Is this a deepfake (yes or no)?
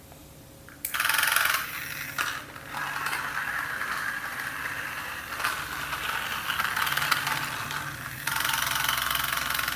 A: no